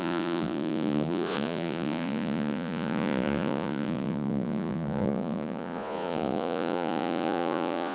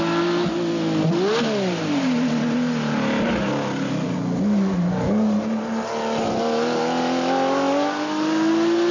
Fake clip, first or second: first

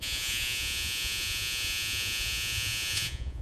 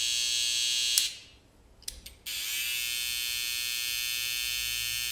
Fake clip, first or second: first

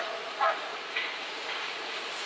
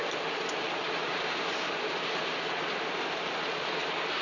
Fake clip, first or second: first